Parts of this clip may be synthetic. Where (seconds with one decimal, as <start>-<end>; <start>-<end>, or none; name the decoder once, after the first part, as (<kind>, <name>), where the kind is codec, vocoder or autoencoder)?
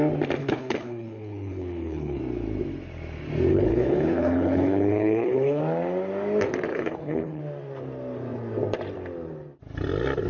0.4-2.2 (codec, HILCodec); 3.5-5.6; 6.7-7.4